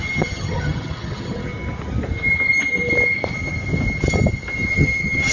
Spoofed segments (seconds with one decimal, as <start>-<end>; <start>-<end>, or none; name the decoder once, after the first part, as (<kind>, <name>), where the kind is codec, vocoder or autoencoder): 0.0-1.5 (vocoder, HiFi-GAN); 4.7-5.3